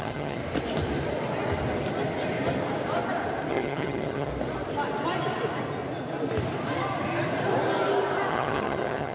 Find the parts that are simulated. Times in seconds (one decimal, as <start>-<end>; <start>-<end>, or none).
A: 0.0-0.4; 3.5-4.3; 8.3-9.1